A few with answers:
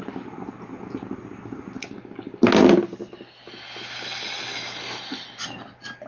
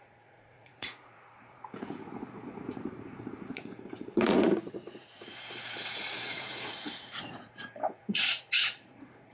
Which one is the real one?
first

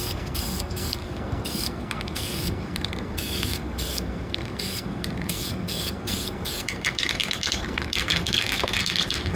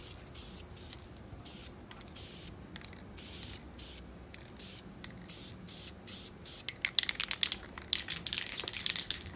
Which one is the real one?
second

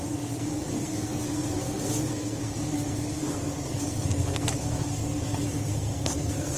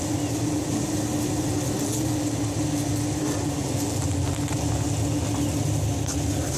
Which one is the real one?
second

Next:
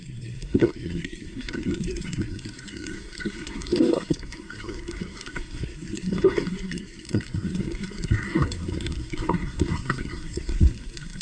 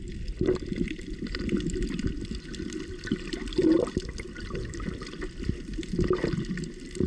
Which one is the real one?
second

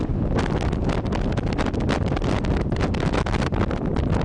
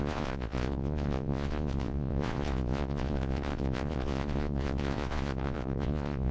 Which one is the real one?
first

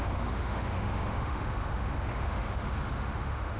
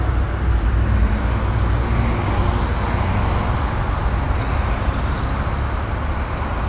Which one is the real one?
second